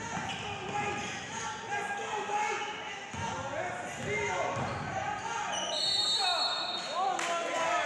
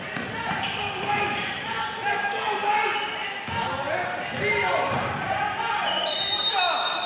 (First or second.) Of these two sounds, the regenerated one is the second